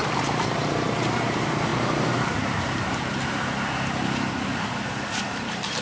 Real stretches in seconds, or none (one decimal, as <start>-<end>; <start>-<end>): none